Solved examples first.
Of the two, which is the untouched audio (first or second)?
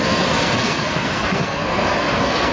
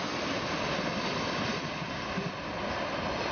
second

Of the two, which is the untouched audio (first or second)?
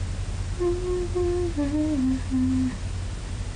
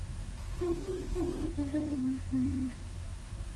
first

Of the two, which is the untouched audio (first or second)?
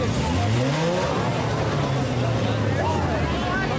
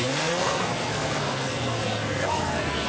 first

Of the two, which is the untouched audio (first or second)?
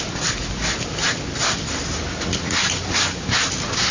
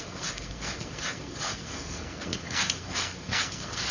first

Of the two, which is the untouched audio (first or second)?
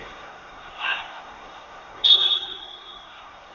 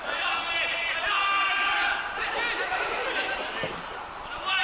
second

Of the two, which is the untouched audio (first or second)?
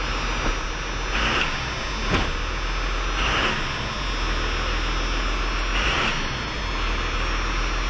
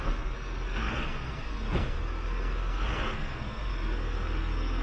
first